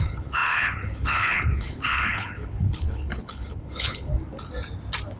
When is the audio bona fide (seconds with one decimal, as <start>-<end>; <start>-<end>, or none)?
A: 4.1-5.2